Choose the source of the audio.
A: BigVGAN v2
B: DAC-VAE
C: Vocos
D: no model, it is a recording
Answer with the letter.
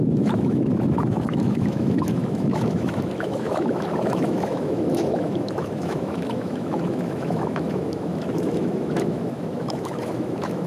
B